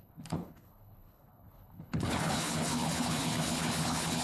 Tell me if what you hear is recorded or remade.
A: remade